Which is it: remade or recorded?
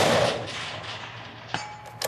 recorded